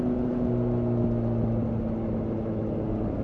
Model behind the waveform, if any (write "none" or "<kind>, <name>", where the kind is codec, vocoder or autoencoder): none